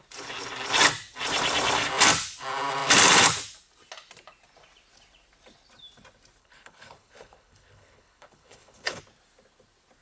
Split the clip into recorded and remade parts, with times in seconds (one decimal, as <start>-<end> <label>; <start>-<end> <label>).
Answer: 0.0-6.4 recorded; 6.4-9.0 remade; 9.0-10.0 recorded

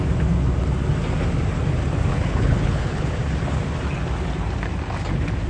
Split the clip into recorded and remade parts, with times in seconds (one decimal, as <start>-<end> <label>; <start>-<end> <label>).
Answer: 0.0-2.1 recorded; 2.1-3.2 remade; 3.2-5.5 recorded